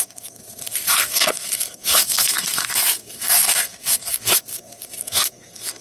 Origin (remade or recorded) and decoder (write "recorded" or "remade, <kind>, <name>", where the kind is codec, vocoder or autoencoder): remade, codec, SNAC